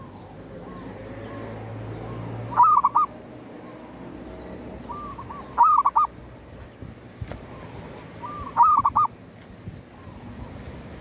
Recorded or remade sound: recorded